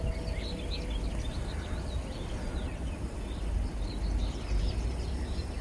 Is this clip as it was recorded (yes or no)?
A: yes